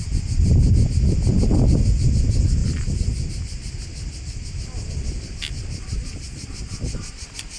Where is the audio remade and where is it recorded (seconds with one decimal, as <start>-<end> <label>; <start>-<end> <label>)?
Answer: 0.0-7.6 recorded